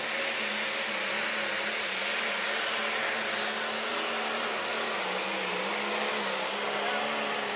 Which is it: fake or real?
real